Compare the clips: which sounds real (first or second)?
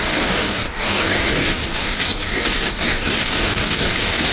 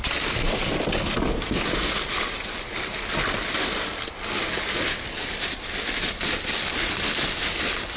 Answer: second